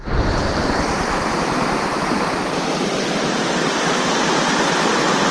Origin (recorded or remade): remade